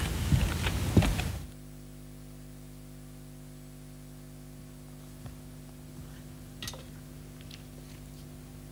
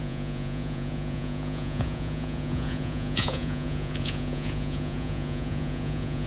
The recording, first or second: first